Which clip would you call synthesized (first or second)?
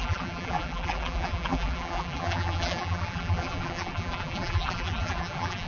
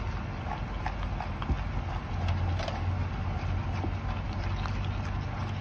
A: first